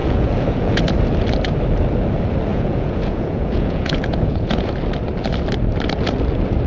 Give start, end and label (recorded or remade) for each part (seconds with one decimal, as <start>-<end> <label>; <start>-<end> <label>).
0.0-0.8 remade; 0.8-2.5 recorded; 2.5-4.7 remade; 4.7-6.7 recorded